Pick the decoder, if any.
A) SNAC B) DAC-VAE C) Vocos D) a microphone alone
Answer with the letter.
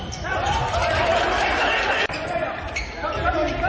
D